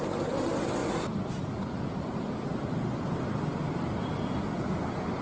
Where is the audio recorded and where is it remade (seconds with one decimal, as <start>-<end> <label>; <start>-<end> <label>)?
0.0-5.2 recorded